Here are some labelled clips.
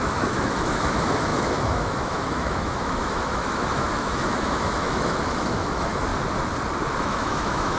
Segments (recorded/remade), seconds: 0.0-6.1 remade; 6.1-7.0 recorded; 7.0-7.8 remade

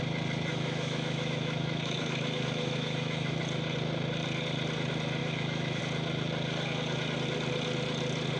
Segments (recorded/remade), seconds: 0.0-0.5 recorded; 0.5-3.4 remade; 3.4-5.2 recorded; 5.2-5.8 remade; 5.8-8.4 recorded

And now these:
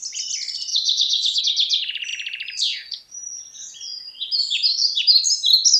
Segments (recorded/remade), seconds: 0.0-0.7 recorded; 0.7-1.4 remade; 1.4-5.8 recorded

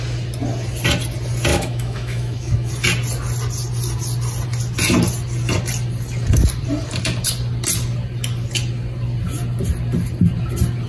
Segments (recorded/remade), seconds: 0.0-1.5 recorded; 1.5-2.7 remade; 2.7-10.9 recorded

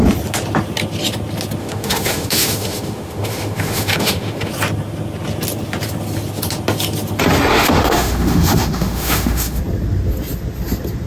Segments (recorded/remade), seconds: 0.0-1.6 recorded; 1.6-4.5 remade; 4.5-7.5 recorded; 7.5-9.6 remade; 9.6-11.1 recorded

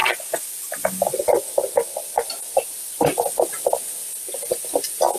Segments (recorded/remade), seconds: 0.0-5.2 recorded

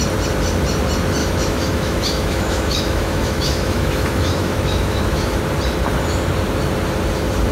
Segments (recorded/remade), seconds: 0.0-1.2 recorded; 1.2-5.4 remade; 5.4-7.5 recorded